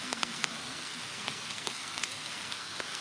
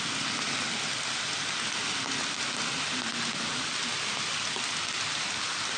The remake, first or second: first